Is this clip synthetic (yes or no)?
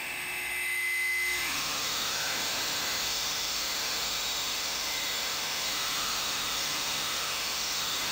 yes